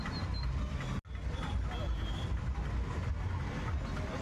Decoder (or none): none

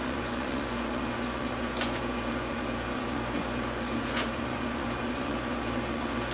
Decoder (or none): vocoder, Vocos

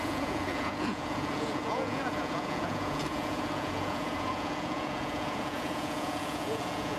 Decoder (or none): vocoder, Vocos